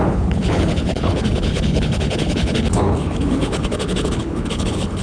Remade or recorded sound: remade